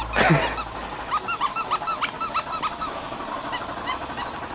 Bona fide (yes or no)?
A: yes